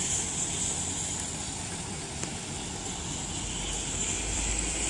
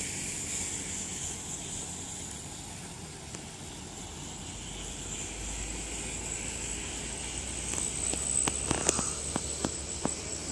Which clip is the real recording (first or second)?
second